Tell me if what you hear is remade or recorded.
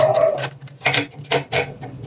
recorded